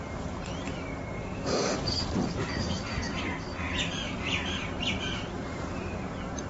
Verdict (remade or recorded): remade